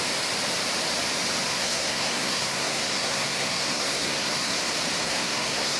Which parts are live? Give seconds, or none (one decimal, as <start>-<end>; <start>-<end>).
0.0-1.5; 4.6-5.0